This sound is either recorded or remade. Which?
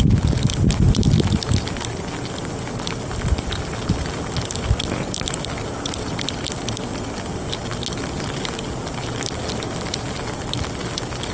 recorded